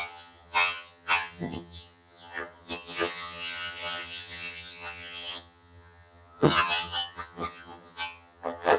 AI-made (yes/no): yes